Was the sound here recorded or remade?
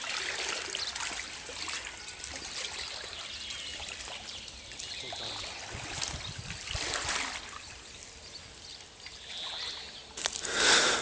recorded